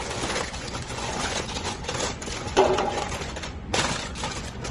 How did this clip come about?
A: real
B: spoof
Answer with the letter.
B